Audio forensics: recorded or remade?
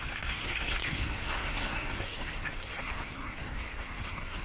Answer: remade